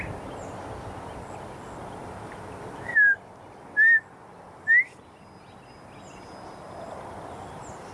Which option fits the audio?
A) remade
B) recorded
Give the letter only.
B